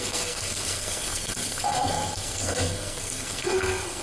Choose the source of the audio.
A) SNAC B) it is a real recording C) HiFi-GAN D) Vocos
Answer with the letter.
A